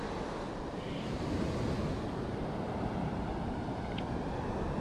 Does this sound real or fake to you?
real